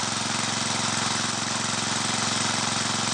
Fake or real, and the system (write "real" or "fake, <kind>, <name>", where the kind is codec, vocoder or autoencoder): real